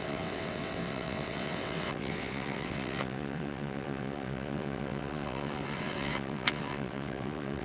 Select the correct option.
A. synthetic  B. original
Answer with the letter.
A